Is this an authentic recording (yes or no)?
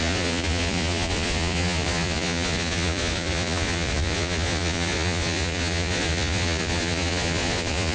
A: no